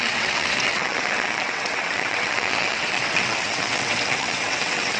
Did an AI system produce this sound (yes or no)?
yes